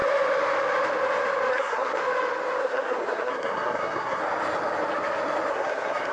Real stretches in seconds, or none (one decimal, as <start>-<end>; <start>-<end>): 0.0-1.5; 2.0-2.6; 4.2-5.5